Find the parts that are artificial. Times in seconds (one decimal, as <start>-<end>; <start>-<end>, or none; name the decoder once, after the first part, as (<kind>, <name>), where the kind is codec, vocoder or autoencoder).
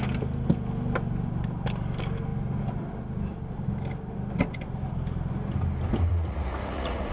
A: 6.1-7.1 (vocoder, Vocos)